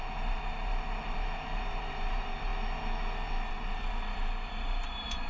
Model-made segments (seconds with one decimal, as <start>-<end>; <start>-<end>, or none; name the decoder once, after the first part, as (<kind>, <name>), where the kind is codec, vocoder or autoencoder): 0.0-2.5 (vocoder, BigVGAN v2); 3.5-5.3